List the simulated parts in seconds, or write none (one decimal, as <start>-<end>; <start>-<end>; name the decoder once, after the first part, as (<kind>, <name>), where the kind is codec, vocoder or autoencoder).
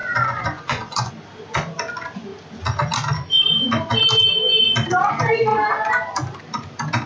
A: 0.0-1.1 (vocoder, Vocos)